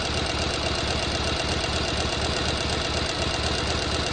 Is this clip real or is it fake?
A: real